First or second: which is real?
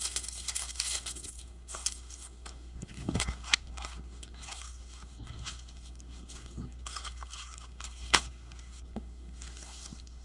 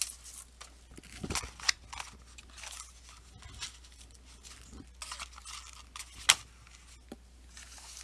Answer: second